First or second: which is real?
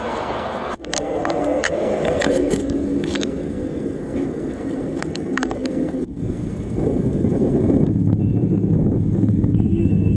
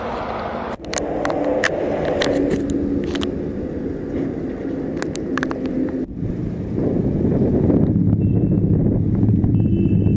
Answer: second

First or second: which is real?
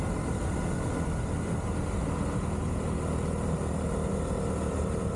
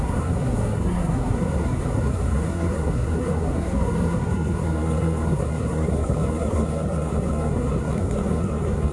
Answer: first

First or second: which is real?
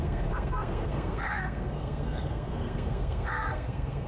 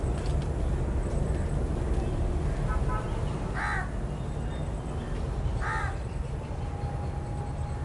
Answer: second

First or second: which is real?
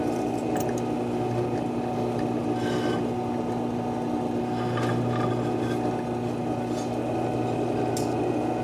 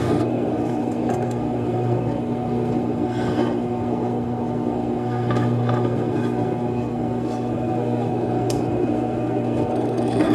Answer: first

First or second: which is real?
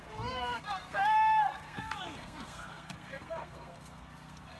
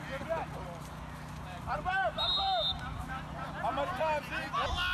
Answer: second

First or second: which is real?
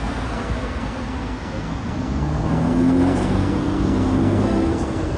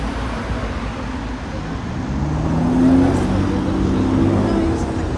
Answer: second